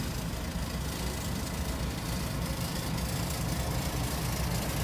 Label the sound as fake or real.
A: real